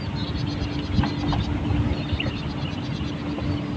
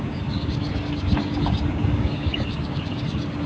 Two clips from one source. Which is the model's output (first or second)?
second